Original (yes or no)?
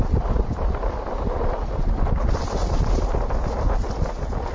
yes